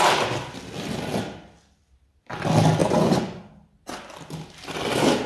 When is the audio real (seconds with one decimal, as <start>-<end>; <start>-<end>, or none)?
0.0-2.8; 3.4-5.3